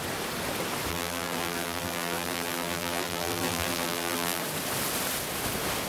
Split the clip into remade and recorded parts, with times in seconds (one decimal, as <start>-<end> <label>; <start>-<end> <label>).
0.0-0.9 recorded; 0.9-4.4 remade; 4.4-5.9 recorded